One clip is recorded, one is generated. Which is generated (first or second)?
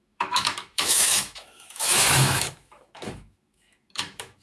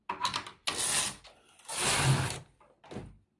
first